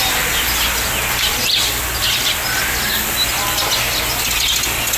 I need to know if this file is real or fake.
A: real